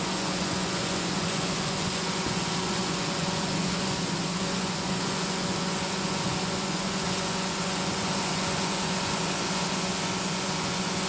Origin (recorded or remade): remade